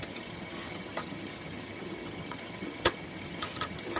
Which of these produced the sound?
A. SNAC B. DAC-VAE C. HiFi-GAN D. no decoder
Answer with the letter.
C